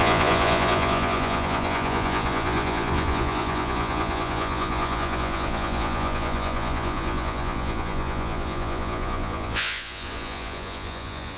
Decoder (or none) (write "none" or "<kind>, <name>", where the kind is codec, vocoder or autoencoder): vocoder, Vocos